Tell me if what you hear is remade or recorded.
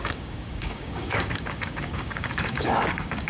remade